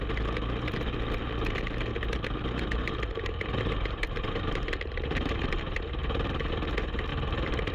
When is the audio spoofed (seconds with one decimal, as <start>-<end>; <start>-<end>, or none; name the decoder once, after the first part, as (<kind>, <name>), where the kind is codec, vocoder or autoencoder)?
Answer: 1.9-6.5 (vocoder, BigVGAN v2); 7.1-7.7